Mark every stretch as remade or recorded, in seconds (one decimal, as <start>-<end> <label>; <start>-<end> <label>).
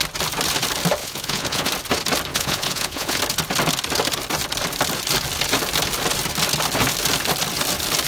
0.0-1.0 recorded; 1.0-1.7 remade; 1.7-2.3 recorded; 2.3-3.2 remade; 3.2-8.1 recorded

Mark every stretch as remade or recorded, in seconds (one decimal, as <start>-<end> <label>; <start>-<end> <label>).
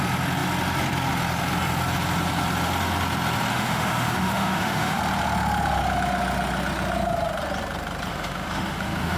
0.0-3.5 recorded; 3.5-5.0 remade; 5.0-8.1 recorded; 8.1-9.2 remade